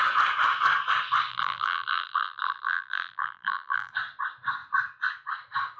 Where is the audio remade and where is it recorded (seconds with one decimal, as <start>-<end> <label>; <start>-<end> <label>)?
0.0-1.3 recorded; 1.3-3.9 remade; 3.9-5.8 recorded